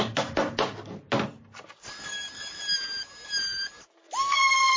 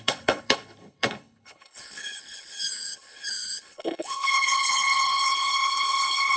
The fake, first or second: second